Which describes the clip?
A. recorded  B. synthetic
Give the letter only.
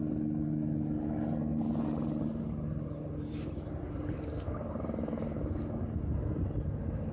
A